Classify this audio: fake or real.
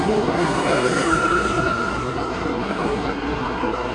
fake